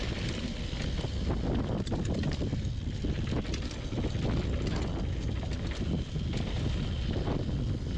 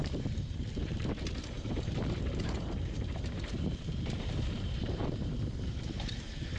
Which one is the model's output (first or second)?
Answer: second